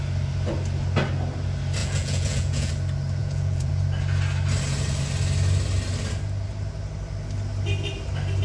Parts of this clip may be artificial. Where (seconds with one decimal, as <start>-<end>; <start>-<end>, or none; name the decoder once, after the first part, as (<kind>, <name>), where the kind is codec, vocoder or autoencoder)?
1.8-2.7 (vocoder, Vocos); 3.2-3.7